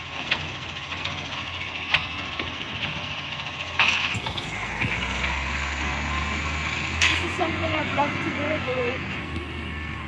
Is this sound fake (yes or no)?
yes